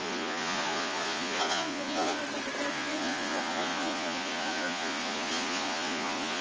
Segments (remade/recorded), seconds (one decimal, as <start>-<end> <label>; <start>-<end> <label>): 0.0-2.2 remade; 2.2-2.7 recorded; 2.7-6.4 remade